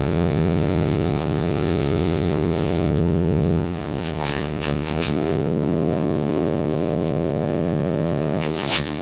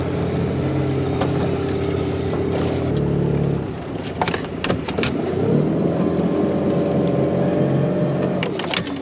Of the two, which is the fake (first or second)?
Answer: first